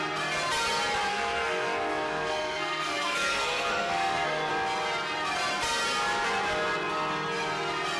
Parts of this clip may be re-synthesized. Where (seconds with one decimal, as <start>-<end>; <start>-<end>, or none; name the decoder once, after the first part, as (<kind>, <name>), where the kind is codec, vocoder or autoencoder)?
1.1-4.5 (codec, SNAC)